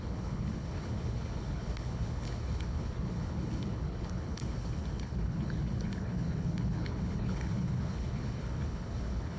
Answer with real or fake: fake